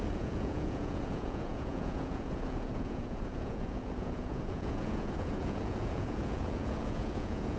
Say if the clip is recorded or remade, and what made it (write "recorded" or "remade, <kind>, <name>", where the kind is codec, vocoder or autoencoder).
remade, vocoder, Vocos